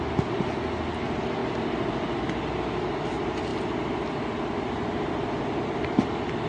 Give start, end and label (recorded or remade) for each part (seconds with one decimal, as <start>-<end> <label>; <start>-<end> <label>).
0.0-6.5 recorded